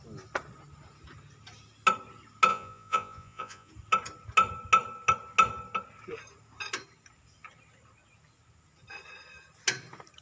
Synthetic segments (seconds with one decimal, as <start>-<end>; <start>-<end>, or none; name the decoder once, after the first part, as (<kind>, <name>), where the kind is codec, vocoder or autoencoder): 2.5-3.7 (vocoder, Vocos)